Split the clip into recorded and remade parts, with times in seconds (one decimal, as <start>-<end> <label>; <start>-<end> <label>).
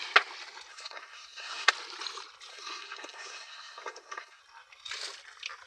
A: 0.0-0.7 recorded; 0.7-1.7 remade; 1.7-2.5 recorded; 2.5-4.4 remade; 4.4-5.7 recorded